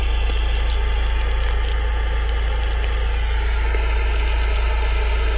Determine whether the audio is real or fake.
real